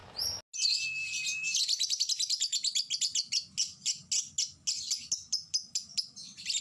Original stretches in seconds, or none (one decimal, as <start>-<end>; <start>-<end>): 0.0-6.6